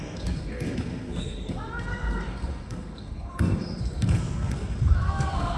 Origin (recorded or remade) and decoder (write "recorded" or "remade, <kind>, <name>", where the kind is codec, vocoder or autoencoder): remade, codec, SNAC